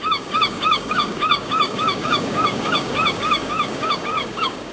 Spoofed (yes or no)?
yes